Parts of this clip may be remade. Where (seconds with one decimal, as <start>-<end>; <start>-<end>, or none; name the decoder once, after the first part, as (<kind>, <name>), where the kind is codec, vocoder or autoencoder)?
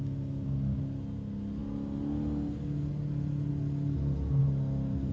none